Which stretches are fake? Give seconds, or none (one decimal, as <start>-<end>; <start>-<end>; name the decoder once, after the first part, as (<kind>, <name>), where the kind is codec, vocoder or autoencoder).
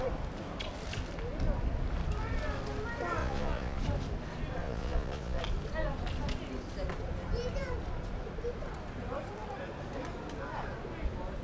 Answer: 3.2-3.8 (vocoder, Vocos); 4.6-5.4